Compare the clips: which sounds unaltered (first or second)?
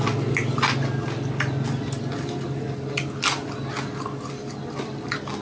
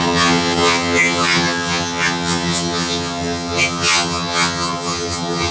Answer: first